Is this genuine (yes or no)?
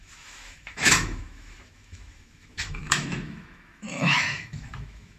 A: no